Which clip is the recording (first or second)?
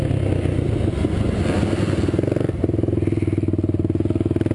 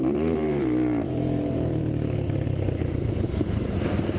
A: first